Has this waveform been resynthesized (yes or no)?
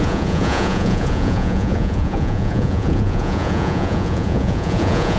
yes